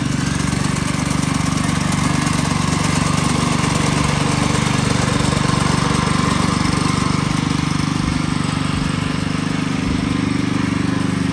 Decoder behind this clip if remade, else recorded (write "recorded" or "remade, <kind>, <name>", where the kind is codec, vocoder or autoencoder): recorded